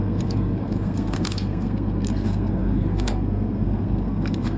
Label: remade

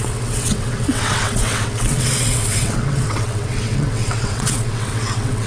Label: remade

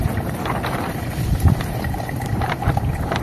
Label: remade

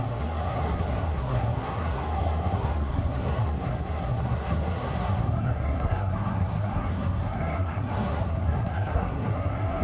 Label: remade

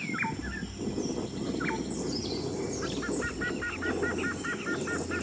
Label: recorded